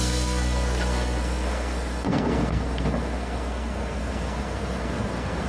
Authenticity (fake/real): fake